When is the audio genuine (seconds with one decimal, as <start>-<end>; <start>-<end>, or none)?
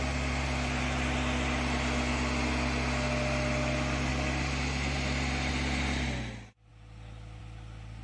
0.0-8.0